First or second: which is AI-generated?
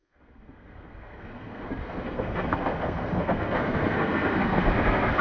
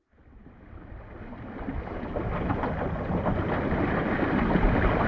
first